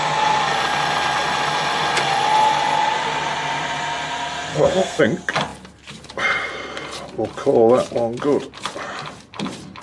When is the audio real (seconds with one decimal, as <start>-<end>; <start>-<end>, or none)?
0.0-4.5; 5.0-9.8